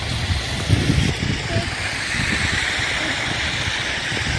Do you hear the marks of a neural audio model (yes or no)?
no